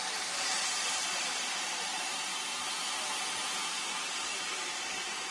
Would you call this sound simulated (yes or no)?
no